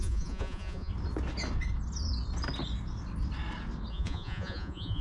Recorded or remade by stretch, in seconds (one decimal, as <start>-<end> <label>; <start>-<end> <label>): 0.0-0.9 remade; 0.9-3.9 recorded; 3.9-5.0 remade